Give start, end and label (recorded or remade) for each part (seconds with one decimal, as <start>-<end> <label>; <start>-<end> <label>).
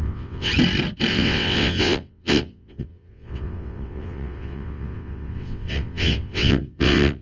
0.0-0.5 remade; 0.5-1.1 recorded; 1.1-7.2 remade